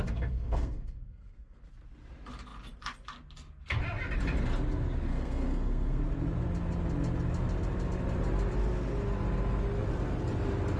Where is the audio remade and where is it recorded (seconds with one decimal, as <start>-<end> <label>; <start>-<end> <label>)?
0.0-1.6 remade; 1.6-5.1 recorded; 5.1-6.0 remade; 6.0-10.8 recorded